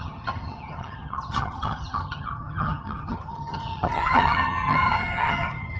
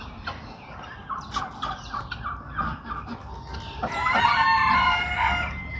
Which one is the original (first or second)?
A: second